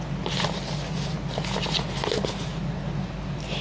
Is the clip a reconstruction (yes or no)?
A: no